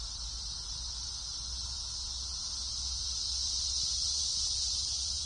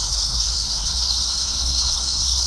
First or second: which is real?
first